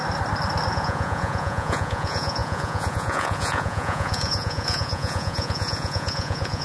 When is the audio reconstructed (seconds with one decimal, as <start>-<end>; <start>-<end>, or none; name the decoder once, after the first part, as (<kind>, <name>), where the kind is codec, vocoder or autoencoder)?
0.7-6.6 (vocoder, Vocos)